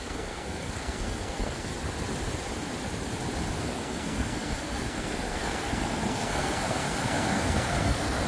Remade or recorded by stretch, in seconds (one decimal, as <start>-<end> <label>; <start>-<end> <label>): 0.0-1.7 remade; 1.7-3.6 recorded; 3.6-8.3 remade